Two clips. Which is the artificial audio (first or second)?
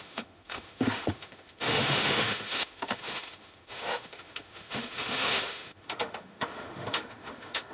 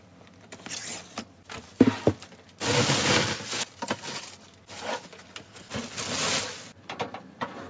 first